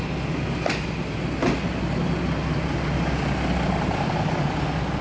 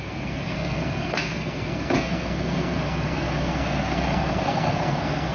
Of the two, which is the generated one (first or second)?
second